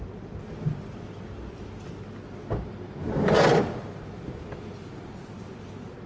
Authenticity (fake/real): real